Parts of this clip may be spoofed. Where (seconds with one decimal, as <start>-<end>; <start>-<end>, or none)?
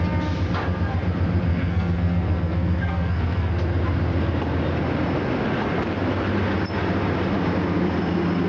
1.5-3.5